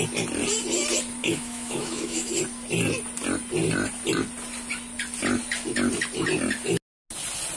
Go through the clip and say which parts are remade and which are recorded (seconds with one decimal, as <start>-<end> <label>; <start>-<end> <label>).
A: 0.0-1.2 recorded; 1.2-2.3 remade; 2.3-7.6 recorded